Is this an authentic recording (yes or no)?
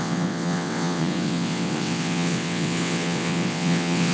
no